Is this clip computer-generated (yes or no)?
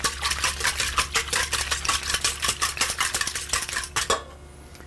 no